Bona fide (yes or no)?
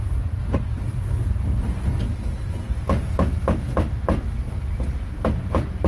yes